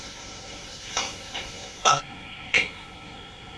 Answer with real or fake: fake